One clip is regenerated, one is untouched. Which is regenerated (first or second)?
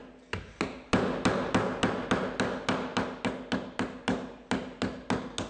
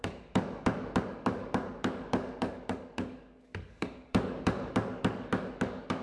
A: second